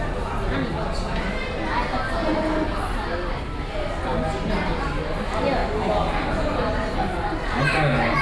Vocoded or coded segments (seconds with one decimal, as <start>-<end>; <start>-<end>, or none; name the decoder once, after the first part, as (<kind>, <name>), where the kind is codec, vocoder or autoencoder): none

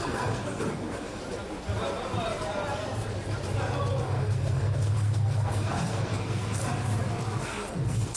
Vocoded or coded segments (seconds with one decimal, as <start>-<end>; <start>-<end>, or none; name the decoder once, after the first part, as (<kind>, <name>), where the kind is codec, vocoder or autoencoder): 0.0-1.2 (codec, SNAC); 4.0-6.6; 7.4-8.2

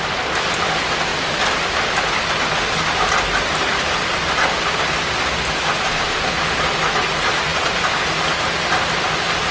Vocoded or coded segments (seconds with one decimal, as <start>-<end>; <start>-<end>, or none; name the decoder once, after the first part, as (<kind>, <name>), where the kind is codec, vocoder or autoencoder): none

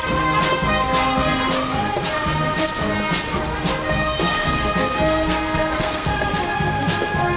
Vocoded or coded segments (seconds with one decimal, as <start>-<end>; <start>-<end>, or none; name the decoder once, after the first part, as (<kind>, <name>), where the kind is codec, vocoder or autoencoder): 4.2-6.3 (codec, SNAC)

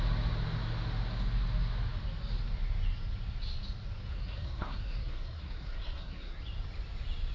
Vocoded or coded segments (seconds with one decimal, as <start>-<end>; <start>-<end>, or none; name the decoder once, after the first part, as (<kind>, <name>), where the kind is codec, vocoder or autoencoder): 4.1-6.4 (codec, SNAC)

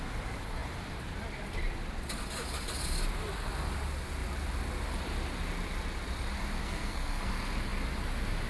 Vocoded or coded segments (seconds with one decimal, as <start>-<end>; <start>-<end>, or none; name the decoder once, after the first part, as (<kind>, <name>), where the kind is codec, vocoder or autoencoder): 6.6-7.3 (codec, SNAC)